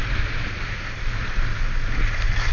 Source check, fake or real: real